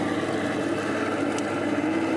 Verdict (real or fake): real